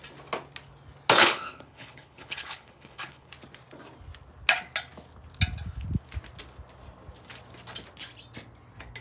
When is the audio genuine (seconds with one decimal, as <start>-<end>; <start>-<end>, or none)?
0.0-1.2; 3.3-9.0